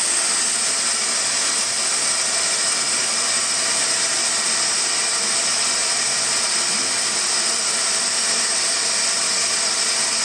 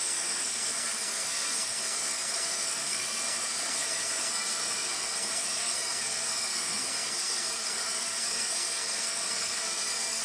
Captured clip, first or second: first